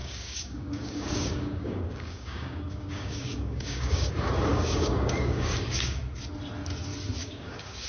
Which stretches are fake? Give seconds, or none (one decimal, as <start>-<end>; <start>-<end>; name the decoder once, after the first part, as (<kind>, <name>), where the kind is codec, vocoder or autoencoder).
0.0-4.1 (codec, DAC); 4.5-6.0; 7.2-7.9